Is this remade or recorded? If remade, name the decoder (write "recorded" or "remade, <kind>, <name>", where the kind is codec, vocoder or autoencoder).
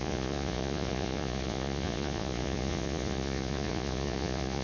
remade, vocoder, Vocos